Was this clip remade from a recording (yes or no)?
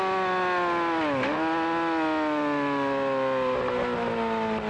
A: no